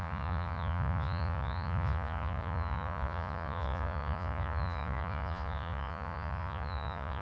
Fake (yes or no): yes